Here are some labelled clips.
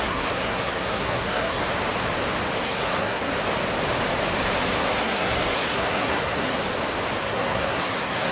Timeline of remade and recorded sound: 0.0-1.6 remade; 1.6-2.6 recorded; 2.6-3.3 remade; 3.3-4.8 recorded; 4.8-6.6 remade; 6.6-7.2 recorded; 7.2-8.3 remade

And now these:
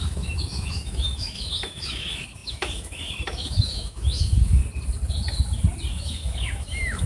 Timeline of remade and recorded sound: 0.0-4.6 remade; 4.6-5.9 recorded; 5.9-7.1 remade

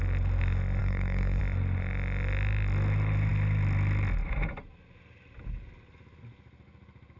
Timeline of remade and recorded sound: 0.0-0.8 recorded; 0.8-1.4 remade; 1.4-7.2 recorded

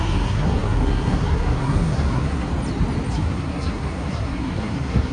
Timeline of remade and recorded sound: 0.0-2.5 remade; 2.5-3.1 recorded; 3.1-5.1 remade